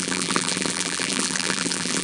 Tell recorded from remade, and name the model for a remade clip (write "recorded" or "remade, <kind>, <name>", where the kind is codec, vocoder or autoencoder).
remade, vocoder, BigVGAN v2